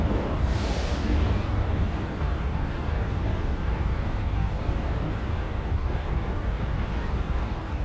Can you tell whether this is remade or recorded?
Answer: remade